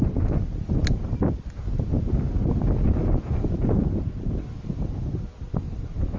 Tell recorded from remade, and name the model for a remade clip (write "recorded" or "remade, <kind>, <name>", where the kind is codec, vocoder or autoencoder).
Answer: recorded